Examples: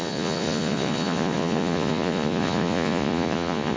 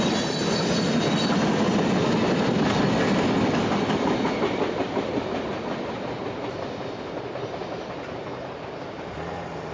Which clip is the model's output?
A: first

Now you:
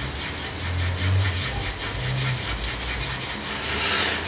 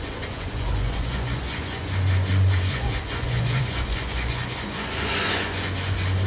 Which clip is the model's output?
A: second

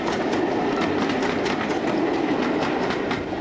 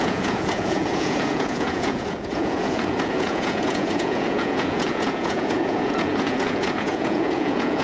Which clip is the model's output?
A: second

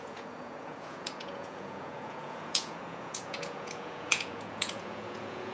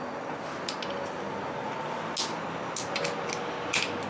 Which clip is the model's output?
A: first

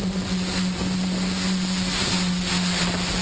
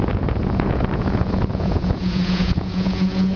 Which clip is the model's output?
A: second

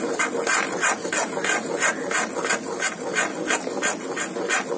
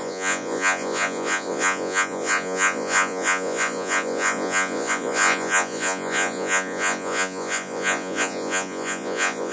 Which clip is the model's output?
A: second